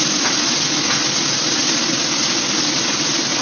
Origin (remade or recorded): recorded